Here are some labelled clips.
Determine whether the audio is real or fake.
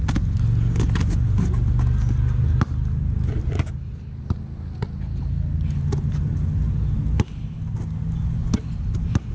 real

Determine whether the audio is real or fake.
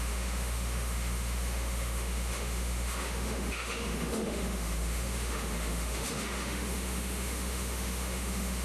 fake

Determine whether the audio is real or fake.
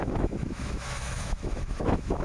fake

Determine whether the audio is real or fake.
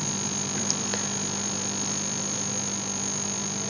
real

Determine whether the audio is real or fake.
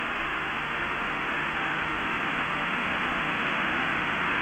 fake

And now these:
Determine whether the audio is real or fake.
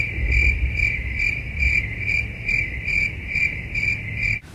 real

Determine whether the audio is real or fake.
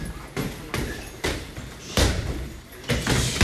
real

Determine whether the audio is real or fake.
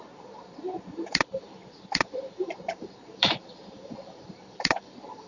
fake